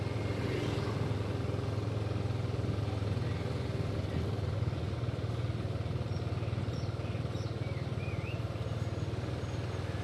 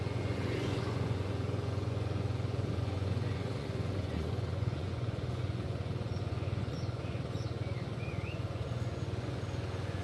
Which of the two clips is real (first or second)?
first